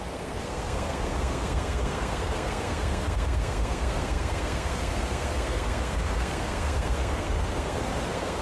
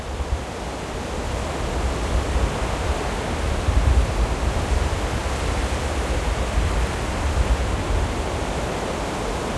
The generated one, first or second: first